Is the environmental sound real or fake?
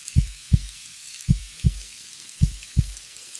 fake